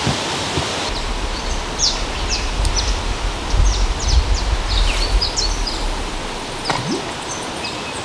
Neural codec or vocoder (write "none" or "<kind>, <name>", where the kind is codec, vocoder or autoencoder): none